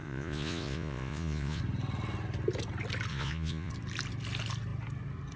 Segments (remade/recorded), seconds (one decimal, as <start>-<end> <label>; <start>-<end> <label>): 0.0-1.6 remade; 1.6-3.1 recorded; 3.1-3.7 remade; 3.7-5.4 recorded